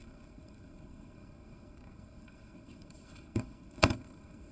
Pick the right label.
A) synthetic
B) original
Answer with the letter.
A